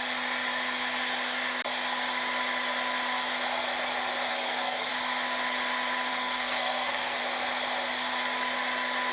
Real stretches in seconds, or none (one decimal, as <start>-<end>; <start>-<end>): 0.0-4.3; 4.9-6.1; 7.2-9.1